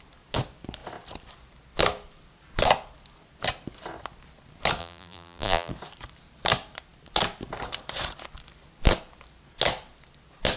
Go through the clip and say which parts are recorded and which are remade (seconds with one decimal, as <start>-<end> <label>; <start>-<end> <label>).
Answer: 0.0-4.8 recorded; 4.8-5.7 remade; 5.7-10.6 recorded